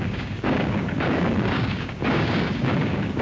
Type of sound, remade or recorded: remade